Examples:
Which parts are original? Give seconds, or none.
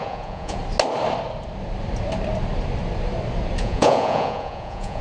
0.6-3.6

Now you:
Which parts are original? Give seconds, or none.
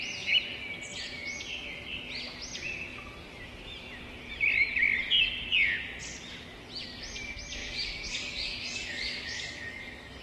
0.0-7.6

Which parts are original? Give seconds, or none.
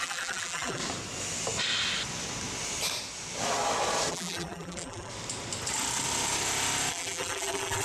0.8-4.1; 5.1-6.9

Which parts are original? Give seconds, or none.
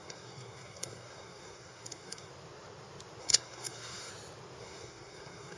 2.3-3.2; 4.1-4.6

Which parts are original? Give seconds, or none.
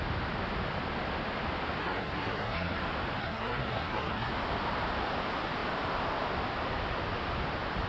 0.0-1.8; 2.8-3.2; 4.3-7.9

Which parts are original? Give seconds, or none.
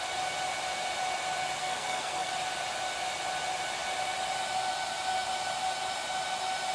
0.0-1.6; 2.3-6.7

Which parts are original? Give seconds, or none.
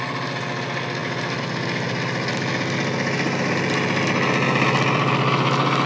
0.0-5.9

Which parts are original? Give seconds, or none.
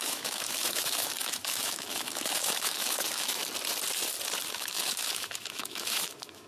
3.4-4.5